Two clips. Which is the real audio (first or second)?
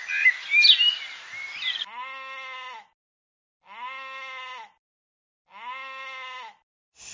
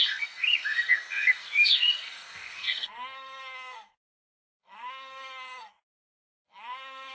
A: first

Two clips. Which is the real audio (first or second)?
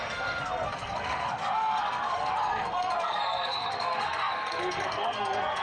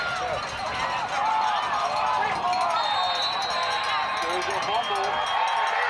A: second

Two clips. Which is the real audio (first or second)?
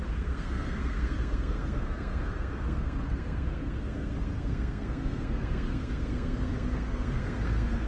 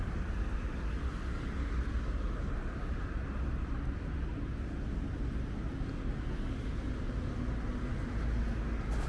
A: second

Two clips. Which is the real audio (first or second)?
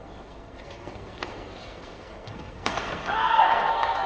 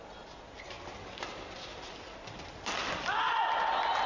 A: second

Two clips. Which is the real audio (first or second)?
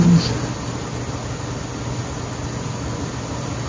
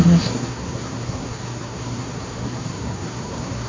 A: first